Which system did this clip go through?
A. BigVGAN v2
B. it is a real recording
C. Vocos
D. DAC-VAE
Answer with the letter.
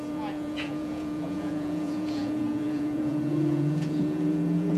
C